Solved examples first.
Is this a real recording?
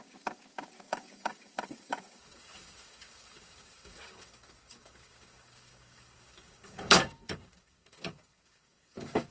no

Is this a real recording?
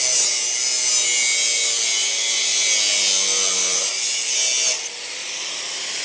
yes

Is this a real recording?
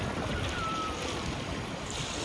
yes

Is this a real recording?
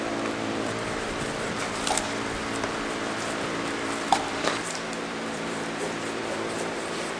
no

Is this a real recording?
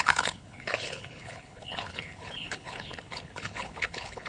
no